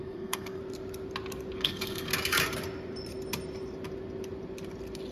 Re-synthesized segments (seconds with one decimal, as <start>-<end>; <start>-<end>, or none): 0.0-0.6; 1.6-2.1